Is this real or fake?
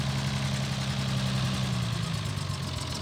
real